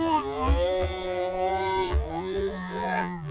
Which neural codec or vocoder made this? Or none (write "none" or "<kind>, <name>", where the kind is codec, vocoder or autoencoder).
vocoder, BigVGAN v2